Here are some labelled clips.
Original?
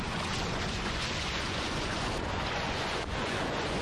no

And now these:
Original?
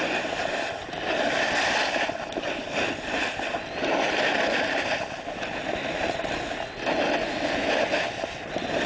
yes